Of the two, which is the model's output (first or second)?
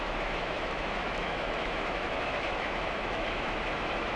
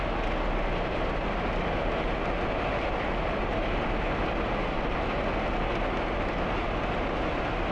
first